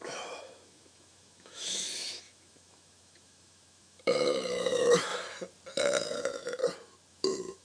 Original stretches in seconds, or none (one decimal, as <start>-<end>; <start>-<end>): 5.1-5.8; 6.6-7.1